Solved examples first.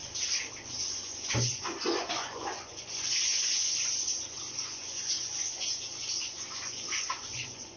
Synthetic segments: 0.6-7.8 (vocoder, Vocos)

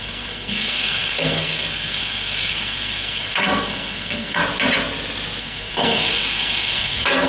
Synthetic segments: 0.0-4.4 (codec, SNAC); 5.4-7.3